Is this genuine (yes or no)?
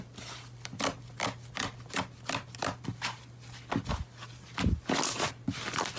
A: yes